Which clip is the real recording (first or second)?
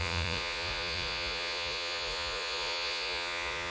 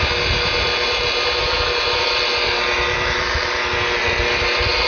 second